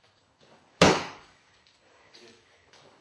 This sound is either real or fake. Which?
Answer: fake